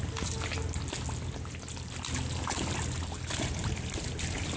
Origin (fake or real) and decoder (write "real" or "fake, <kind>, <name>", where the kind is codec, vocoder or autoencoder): real